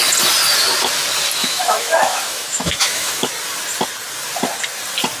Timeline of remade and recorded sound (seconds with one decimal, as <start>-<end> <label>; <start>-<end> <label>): 0.0-1.4 recorded; 1.4-3.3 remade; 3.3-5.2 recorded